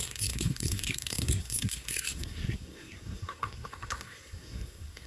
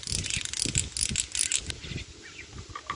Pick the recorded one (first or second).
second